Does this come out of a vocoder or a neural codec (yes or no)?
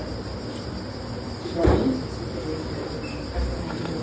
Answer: no